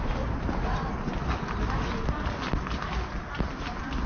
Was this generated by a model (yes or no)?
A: no